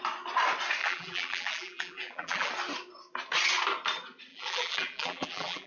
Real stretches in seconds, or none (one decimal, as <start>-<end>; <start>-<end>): 0.0-0.8; 2.5-4.3